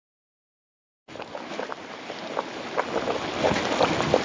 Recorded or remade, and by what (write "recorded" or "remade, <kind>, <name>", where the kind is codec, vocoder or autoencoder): recorded